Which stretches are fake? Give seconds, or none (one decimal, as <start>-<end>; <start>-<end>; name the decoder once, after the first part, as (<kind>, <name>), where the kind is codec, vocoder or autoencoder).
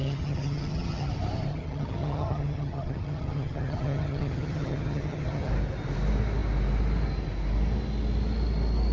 0.0-1.1 (vocoder, HiFi-GAN); 1.5-5.5